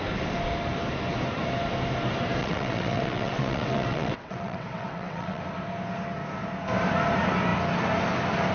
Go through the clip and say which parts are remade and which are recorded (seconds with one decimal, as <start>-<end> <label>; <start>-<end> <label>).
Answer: 0.0-2.4 recorded; 2.4-5.4 remade; 5.4-8.5 recorded